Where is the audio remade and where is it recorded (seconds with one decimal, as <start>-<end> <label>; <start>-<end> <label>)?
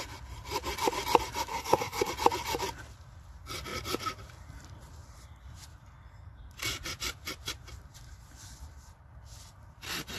0.0-1.5 recorded; 1.5-2.1 remade; 2.1-10.2 recorded